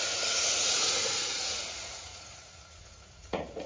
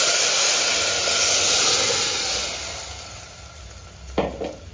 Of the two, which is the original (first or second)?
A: second